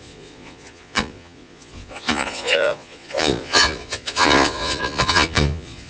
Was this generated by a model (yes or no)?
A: yes